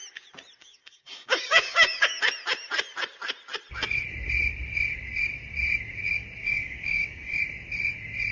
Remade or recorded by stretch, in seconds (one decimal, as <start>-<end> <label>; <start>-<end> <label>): 0.0-0.6 recorded; 0.6-2.2 remade; 2.2-6.4 recorded; 6.4-7.4 remade; 7.4-8.3 recorded